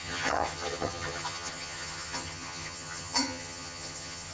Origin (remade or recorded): remade